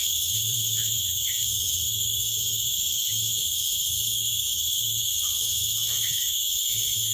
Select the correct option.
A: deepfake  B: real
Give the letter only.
A